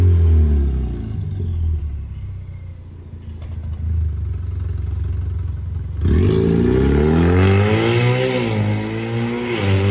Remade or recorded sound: recorded